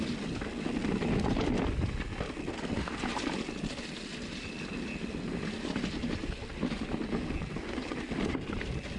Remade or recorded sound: recorded